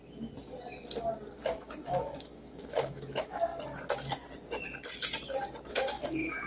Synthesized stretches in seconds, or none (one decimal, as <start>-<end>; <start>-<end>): 1.3-3.5; 5.7-6.5